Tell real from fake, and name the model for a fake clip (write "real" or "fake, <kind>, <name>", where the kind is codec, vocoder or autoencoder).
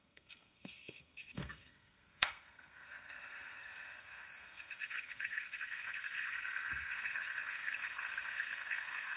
fake, codec, SNAC